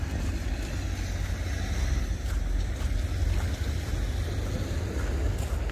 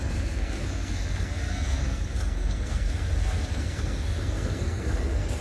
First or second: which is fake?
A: second